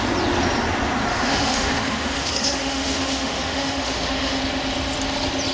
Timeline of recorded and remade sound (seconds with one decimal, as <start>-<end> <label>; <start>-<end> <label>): 0.0-1.1 recorded; 1.1-4.4 remade; 4.4-5.5 recorded

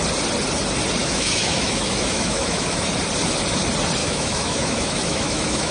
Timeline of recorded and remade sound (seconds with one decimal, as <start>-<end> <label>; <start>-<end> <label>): 0.0-1.0 recorded; 1.0-2.9 remade; 2.9-4.0 recorded; 4.0-5.7 remade

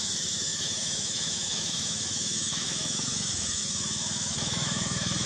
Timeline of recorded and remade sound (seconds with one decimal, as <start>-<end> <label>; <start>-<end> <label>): 0.0-5.3 remade

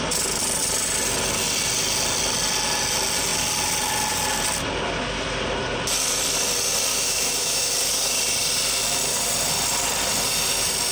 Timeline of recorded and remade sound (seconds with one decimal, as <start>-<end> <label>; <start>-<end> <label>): 0.0-6.9 recorded; 6.9-7.7 remade; 7.7-10.9 recorded

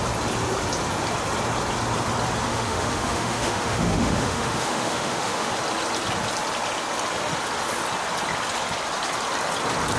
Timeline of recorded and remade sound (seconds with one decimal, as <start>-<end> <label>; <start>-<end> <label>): 0.0-2.5 recorded; 2.5-5.5 remade; 5.5-10.0 recorded

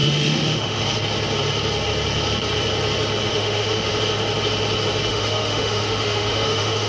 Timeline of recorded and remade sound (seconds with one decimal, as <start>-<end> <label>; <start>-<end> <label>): 0.0-0.8 remade; 0.8-3.3 recorded; 3.3-3.9 remade; 3.9-5.1 recorded; 5.1-6.9 remade

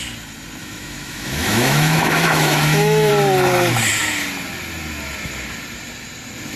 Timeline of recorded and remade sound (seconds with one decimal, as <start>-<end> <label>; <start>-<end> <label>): 0.0-0.6 recorded; 0.6-3.1 remade; 3.1-6.6 recorded